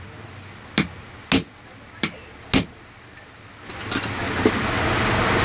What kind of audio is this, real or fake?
real